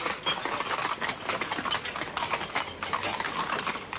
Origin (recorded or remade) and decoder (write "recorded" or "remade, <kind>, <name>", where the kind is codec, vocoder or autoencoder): recorded